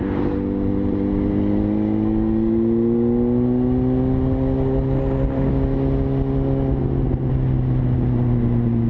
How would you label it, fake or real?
real